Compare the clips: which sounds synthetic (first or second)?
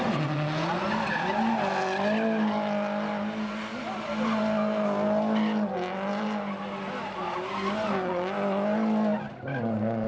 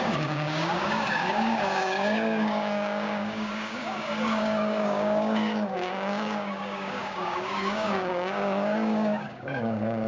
second